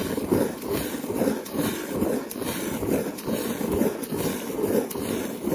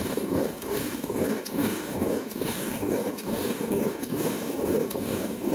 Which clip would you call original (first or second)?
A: first